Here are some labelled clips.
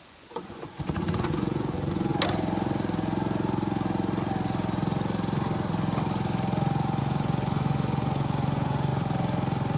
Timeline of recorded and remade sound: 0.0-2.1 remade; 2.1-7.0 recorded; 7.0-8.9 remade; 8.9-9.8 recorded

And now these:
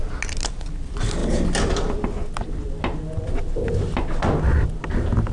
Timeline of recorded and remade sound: 0.0-5.3 recorded

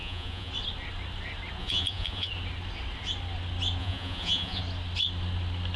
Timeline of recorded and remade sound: 0.0-0.5 remade; 0.5-1.6 recorded; 1.6-2.3 remade; 2.3-3.8 recorded; 3.8-4.6 remade; 4.6-5.8 recorded

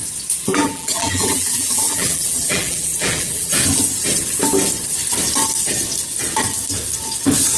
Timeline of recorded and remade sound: 0.0-0.5 recorded; 0.5-3.5 remade; 3.5-7.6 recorded

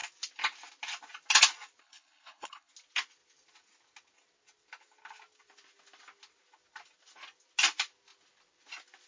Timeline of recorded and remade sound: 0.0-1.8 recorded; 1.8-2.7 remade; 2.7-9.1 recorded

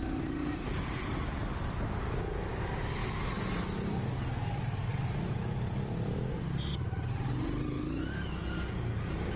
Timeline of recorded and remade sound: 0.0-9.4 recorded

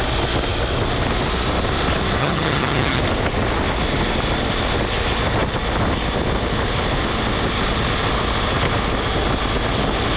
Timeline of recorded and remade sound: 0.0-2.2 recorded; 2.2-3.0 remade; 3.0-10.2 recorded